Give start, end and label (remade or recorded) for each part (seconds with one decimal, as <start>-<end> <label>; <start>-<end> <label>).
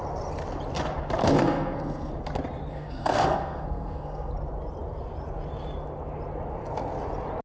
0.0-1.2 recorded; 1.2-2.1 remade; 2.1-2.7 recorded; 2.7-4.3 remade; 4.3-7.4 recorded